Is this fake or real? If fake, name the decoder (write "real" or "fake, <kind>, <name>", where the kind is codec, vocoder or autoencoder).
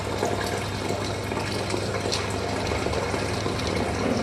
real